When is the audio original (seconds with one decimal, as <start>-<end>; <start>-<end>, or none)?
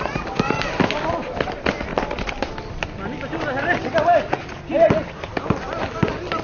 0.0-6.4